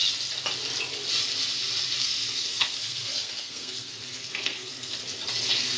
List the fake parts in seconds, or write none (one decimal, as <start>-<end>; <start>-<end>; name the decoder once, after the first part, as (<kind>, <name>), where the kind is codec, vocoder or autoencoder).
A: 2.0-5.0 (codec, SNAC)